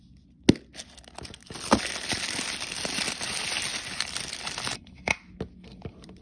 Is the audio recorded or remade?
recorded